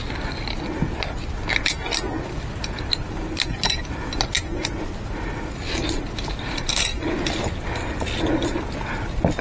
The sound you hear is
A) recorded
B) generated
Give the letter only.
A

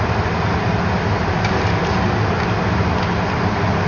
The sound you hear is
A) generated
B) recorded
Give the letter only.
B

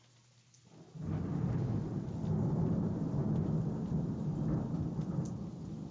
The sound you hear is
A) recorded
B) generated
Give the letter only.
A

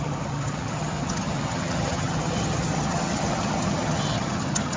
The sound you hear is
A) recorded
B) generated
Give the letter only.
B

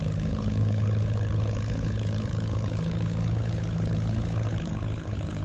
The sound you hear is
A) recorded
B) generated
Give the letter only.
B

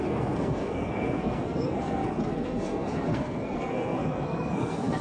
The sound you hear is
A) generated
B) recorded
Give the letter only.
A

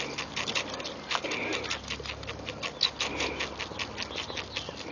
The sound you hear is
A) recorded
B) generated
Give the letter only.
A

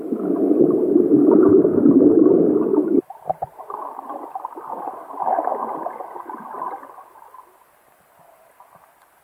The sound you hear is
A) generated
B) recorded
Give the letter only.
B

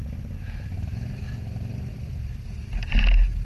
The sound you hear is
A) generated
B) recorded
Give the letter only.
B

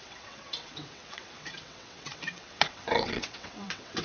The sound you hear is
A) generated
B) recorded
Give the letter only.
A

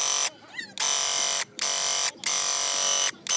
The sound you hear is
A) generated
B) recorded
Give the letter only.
B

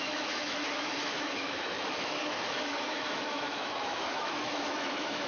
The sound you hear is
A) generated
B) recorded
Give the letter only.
A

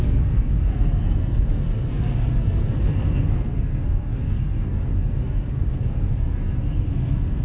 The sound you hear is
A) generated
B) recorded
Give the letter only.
A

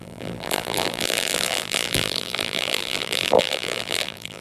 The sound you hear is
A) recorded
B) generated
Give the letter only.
B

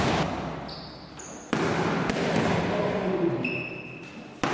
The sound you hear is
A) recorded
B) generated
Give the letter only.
A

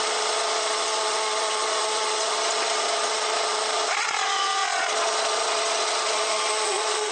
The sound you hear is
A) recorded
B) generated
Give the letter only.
B